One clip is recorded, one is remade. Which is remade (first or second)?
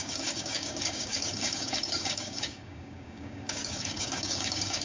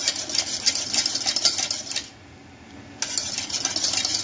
first